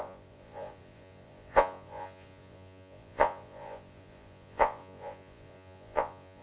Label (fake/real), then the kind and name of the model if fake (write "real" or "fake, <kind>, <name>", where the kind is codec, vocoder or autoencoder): fake, vocoder, Vocos